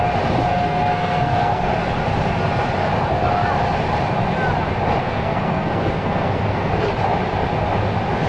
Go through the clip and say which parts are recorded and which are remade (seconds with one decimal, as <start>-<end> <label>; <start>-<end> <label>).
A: 0.0-0.5 recorded; 0.5-1.7 remade; 1.7-5.0 recorded; 5.0-6.7 remade; 6.7-8.3 recorded

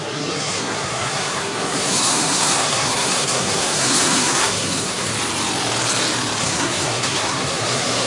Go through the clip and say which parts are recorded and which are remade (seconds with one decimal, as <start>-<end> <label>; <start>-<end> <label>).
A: 0.0-5.1 remade; 5.1-6.4 recorded; 6.4-8.1 remade

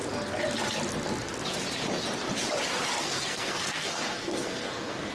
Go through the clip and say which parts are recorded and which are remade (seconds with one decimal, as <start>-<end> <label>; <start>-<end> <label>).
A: 0.0-3.0 recorded; 3.0-5.1 remade

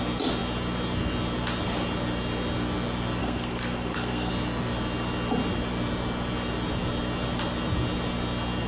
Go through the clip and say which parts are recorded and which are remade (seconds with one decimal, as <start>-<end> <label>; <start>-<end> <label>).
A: 0.0-3.2 recorded; 3.2-4.3 remade; 4.3-8.7 recorded

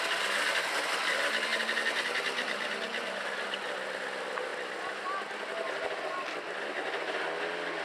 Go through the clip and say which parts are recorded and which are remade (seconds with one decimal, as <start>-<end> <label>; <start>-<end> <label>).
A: 0.0-7.8 recorded

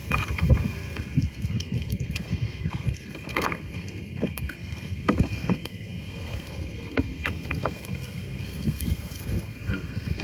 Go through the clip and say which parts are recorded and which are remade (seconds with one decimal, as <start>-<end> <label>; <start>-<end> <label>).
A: 0.0-10.2 remade

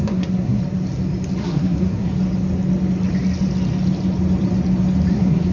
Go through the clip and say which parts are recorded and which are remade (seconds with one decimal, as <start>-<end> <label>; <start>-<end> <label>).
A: 0.0-0.6 remade; 0.6-1.4 recorded; 1.4-2.1 remade; 2.1-5.1 recorded; 5.1-5.5 remade